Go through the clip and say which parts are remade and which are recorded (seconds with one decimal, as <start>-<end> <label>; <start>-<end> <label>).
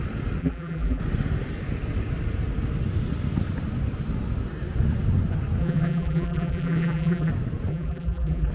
0.0-0.4 recorded; 0.4-1.0 remade; 1.0-5.6 recorded; 5.6-7.3 remade; 7.3-7.7 recorded; 7.7-8.5 remade